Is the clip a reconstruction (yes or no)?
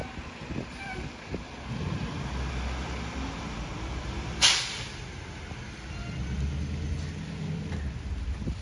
no